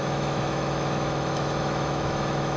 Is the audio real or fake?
fake